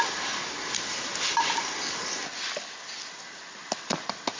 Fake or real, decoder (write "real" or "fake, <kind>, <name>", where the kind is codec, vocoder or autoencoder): real